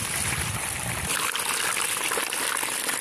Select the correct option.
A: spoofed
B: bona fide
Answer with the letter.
B